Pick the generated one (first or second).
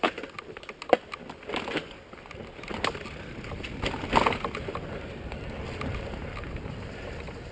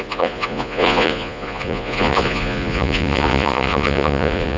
second